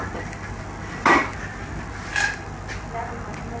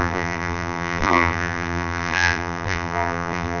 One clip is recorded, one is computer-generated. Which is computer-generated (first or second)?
second